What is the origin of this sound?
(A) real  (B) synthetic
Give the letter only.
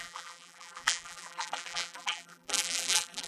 B